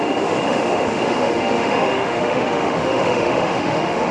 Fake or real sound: fake